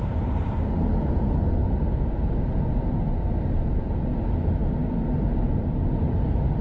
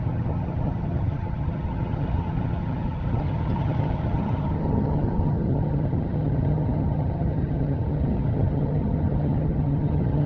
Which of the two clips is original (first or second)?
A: first